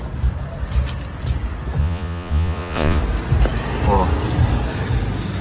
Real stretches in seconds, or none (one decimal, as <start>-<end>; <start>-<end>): 0.0-1.8; 3.0-5.4

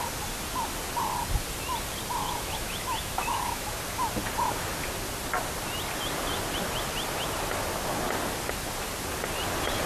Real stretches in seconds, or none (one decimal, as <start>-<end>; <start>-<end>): 0.0-2.2; 3.8-9.9

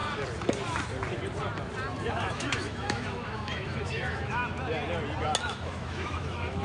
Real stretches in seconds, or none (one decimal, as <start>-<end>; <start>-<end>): 0.0-2.1; 4.4-5.4

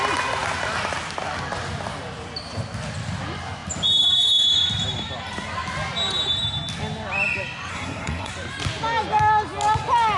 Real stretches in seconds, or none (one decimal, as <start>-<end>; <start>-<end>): 0.0-7.7; 8.3-10.2

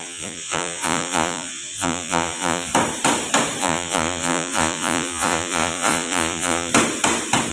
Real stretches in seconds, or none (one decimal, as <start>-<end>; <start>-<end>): 2.7-3.6; 6.7-7.5

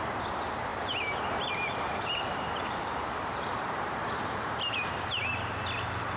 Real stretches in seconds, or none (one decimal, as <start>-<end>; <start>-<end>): 0.0-1.9; 5.3-6.2

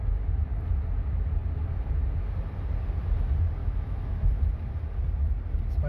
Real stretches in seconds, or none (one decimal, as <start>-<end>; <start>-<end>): 0.0-3.6; 4.3-5.9

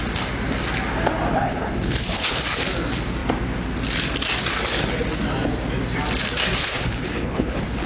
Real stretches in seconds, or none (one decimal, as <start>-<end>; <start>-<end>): 0.0-1.3; 2.4-6.6